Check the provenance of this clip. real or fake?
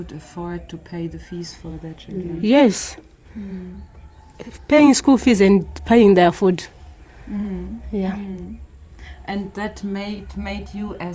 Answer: fake